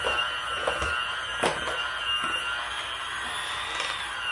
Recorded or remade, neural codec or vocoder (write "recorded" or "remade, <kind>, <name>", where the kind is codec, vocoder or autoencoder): recorded